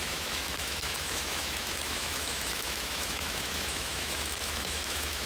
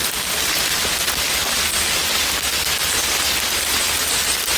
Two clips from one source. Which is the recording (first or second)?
second